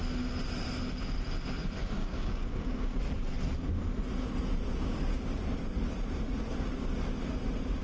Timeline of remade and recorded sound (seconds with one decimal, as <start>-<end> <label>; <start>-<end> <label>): 0.0-2.0 recorded; 2.0-3.0 remade; 3.0-4.8 recorded; 4.8-5.4 remade; 5.4-7.8 recorded

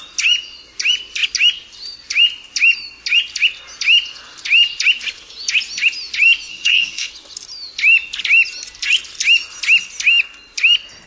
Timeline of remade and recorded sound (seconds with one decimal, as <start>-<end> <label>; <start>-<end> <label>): 0.0-6.5 recorded; 6.5-7.1 remade; 7.1-11.1 recorded

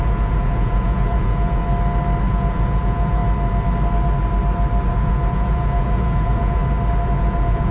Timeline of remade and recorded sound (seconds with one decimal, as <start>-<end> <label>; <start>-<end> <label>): 0.0-1.6 remade; 1.6-2.3 recorded; 2.3-3.2 remade; 3.2-4.9 recorded; 4.9-6.6 remade; 6.6-7.2 recorded; 7.2-7.7 remade

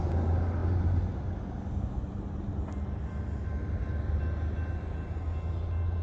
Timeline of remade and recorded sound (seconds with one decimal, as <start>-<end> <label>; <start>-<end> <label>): 0.0-6.0 recorded